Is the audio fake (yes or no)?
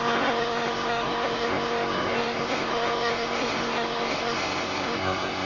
yes